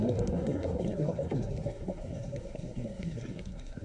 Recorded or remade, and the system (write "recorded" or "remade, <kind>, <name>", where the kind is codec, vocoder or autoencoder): remade, codec, SNAC